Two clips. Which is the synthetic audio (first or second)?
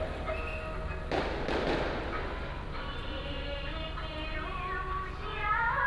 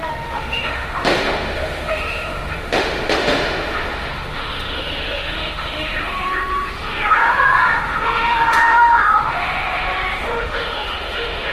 second